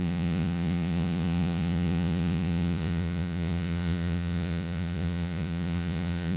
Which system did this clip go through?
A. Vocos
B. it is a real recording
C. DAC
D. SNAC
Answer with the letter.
A